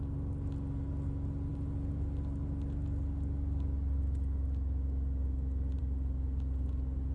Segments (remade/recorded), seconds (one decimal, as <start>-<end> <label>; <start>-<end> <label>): 0.0-7.1 recorded